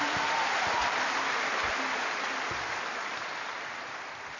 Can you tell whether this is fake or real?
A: fake